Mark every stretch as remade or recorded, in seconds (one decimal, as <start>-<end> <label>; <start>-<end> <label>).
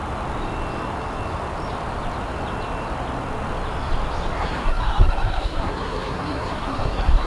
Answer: 0.0-4.4 recorded; 4.4-7.3 remade